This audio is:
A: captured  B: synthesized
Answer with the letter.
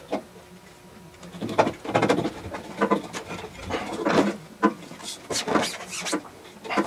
A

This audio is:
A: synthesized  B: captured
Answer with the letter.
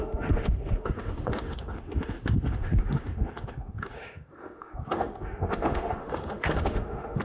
A